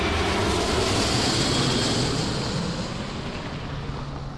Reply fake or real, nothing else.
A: real